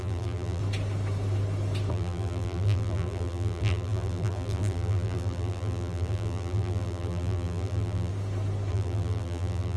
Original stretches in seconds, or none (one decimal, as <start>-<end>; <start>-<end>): 0.6-1.9; 8.1-8.7